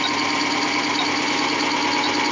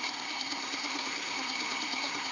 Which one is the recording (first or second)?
first